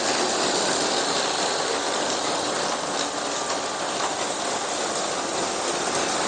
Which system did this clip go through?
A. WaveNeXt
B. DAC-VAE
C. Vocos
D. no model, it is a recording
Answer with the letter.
D